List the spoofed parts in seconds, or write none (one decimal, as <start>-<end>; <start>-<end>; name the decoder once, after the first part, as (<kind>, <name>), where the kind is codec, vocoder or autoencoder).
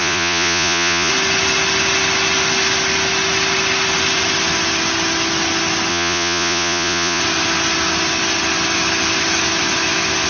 0.0-1.1 (vocoder, Vocos); 5.9-7.2